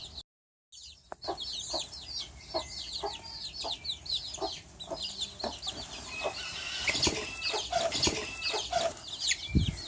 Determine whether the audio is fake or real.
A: real